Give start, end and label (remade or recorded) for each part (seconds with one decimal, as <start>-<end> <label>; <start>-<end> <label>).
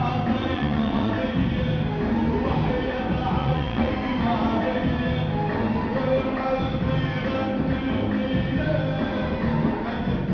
0.0-0.4 recorded; 0.4-1.1 remade; 1.1-3.4 recorded; 3.4-3.9 remade; 3.9-10.3 recorded